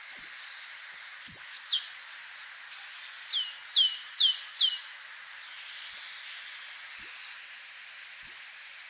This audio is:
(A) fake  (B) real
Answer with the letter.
B